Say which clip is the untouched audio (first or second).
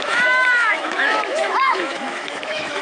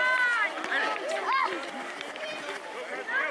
second